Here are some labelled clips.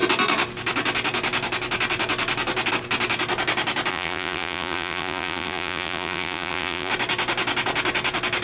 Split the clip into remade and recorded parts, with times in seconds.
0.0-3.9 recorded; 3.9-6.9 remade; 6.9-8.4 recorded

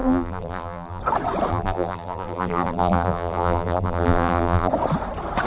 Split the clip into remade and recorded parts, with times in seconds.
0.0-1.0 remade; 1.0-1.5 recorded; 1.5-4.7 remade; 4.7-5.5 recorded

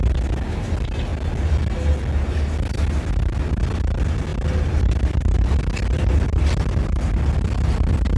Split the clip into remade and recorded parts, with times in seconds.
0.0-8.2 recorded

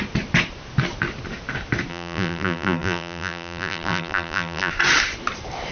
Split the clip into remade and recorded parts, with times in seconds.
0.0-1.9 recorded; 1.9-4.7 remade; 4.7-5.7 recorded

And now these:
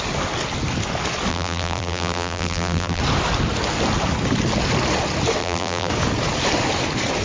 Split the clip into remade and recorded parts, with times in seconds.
0.0-1.3 recorded; 1.3-3.0 remade; 3.0-5.4 recorded; 5.4-5.9 remade; 5.9-7.2 recorded

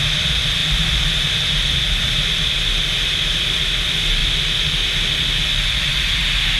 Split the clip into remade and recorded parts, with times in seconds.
0.0-6.6 recorded